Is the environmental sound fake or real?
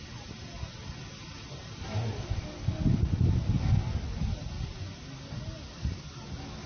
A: real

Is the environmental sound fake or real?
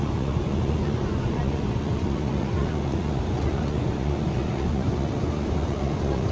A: fake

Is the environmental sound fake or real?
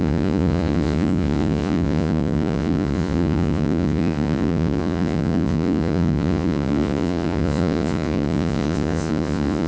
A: fake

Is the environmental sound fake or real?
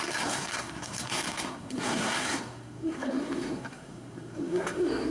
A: fake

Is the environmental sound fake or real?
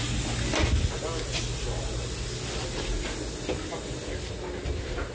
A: real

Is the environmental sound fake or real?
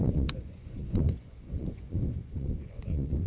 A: fake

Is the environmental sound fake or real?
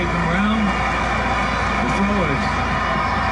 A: real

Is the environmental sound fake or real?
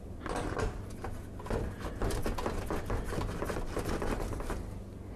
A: real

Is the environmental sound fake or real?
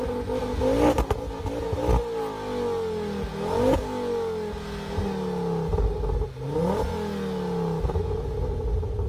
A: real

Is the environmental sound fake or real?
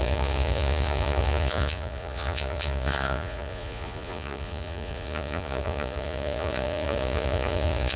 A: fake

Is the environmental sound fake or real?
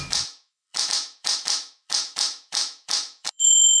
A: fake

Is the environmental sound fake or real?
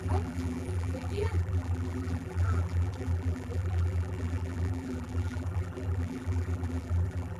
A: fake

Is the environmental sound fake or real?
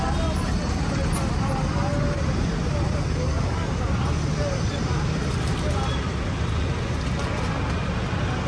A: real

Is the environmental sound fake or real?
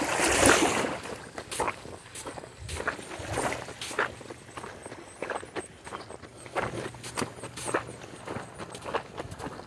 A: real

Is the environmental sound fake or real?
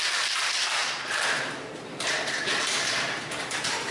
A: fake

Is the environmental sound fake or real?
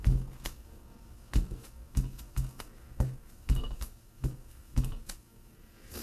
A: fake